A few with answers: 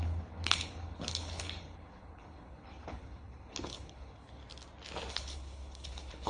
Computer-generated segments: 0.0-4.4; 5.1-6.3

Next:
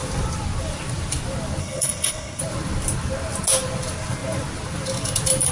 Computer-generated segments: 1.6-2.4

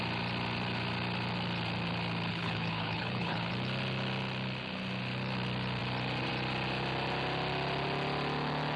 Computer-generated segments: 2.3-3.5

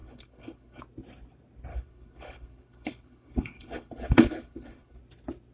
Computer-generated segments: 0.0-0.8; 1.7-5.0